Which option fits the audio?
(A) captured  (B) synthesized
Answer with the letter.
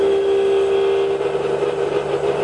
A